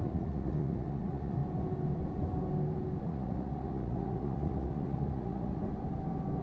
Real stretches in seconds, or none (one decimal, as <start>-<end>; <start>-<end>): 1.4-3.0; 5.5-6.4